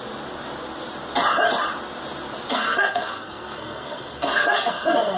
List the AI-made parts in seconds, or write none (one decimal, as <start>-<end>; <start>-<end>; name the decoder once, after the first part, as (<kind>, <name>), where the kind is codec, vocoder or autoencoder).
2.5-5.2 (codec, SNAC)